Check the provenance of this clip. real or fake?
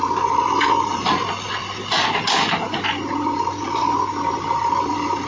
real